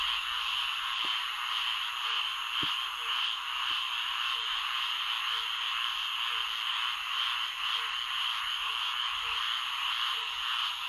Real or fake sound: real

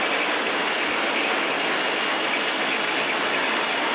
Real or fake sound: real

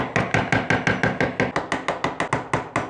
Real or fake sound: real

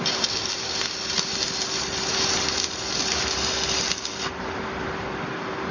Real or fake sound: fake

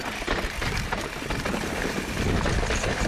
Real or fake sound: real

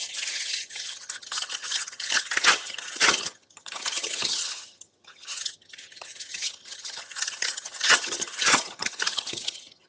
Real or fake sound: fake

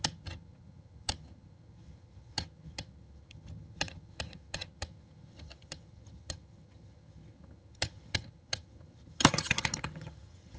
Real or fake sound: fake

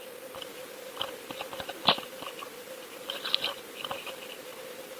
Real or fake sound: real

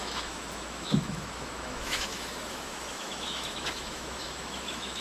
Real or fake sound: fake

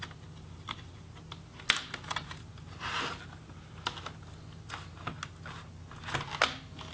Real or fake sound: real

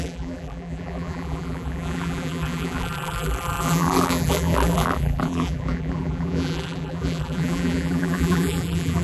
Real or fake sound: fake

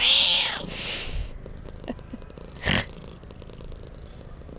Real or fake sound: real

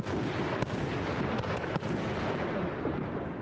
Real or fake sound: real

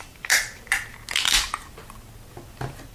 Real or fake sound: real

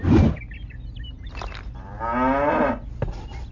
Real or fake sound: real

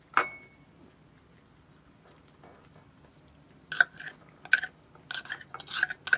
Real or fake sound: real